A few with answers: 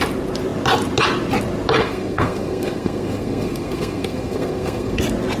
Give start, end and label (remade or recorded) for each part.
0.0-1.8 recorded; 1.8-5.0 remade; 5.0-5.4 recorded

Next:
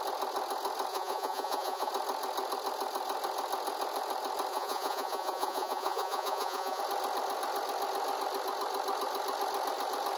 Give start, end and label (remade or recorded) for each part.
0.0-0.9 recorded; 0.9-1.9 remade; 1.9-4.5 recorded; 4.5-6.8 remade; 6.8-10.2 recorded